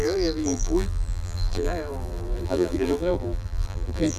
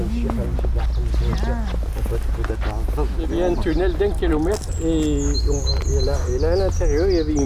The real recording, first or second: second